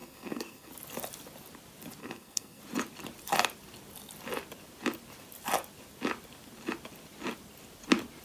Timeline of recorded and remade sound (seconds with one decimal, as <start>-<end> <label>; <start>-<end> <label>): 0.0-0.7 remade; 0.7-2.0 recorded; 2.0-2.6 remade; 2.6-8.2 recorded